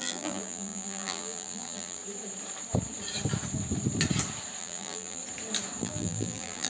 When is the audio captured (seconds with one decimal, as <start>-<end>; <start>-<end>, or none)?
2.0-4.6; 5.2-5.8